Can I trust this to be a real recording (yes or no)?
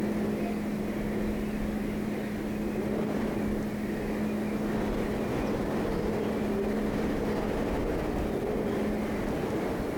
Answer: yes